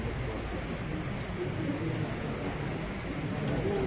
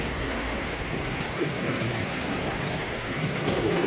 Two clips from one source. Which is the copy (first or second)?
second